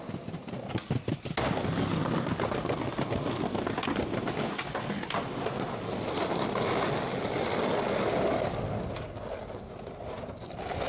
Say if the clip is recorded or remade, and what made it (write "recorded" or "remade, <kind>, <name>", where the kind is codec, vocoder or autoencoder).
recorded